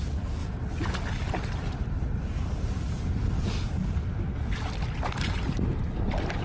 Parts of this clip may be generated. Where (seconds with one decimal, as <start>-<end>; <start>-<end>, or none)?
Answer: none